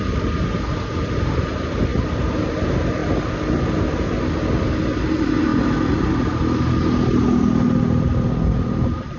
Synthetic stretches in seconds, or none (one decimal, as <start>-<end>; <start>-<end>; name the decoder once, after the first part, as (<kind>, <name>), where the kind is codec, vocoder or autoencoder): none